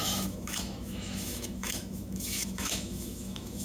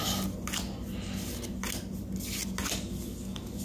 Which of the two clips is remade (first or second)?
first